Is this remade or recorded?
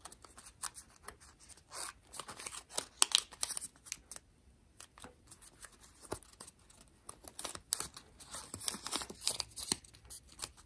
recorded